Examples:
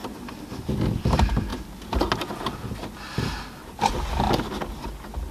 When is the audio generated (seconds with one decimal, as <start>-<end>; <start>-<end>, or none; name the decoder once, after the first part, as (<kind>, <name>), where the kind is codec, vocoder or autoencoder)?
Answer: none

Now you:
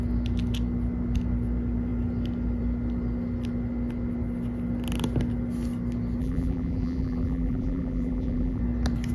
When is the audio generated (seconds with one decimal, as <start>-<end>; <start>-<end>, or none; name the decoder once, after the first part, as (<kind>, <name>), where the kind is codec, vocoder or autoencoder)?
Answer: 6.2-8.6 (vocoder, BigVGAN v2)

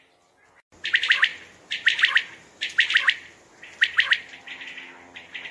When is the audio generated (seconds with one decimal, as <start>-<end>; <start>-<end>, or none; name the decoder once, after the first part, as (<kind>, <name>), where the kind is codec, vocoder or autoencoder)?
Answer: none